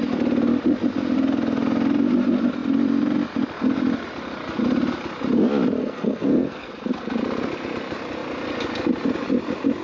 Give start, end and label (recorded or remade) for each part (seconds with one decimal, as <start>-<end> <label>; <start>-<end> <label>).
0.0-5.8 recorded; 5.8-6.7 remade; 6.7-9.8 recorded